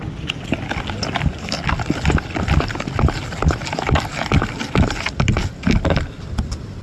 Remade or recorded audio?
recorded